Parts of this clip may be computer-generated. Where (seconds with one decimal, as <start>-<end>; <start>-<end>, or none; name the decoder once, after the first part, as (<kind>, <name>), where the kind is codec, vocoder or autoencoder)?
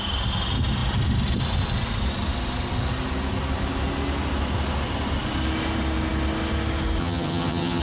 7.0-7.8 (vocoder, HiFi-GAN)